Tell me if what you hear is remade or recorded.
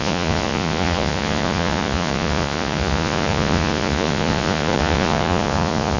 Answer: remade